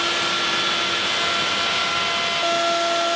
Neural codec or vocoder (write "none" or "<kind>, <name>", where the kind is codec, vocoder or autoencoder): none